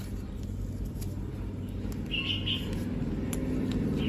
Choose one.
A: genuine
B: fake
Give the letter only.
A